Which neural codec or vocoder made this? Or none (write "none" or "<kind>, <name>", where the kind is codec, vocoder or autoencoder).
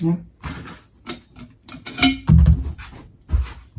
none